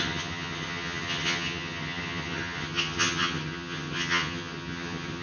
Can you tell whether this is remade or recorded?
remade